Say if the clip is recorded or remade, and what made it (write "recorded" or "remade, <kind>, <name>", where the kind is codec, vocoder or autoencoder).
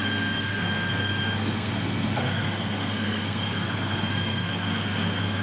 remade, codec, SNAC